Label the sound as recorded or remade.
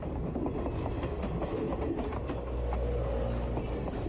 recorded